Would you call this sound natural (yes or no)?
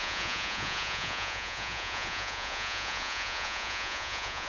no